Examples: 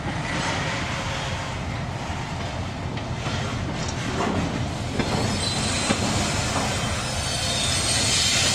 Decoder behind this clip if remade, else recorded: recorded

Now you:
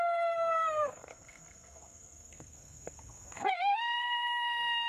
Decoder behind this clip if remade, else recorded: remade, codec, SNAC